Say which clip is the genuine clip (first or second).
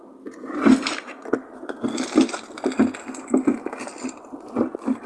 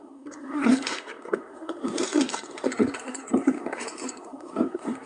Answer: first